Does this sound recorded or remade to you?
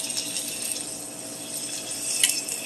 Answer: recorded